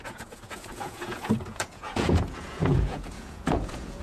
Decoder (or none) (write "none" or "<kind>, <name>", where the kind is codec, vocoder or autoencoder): vocoder, Vocos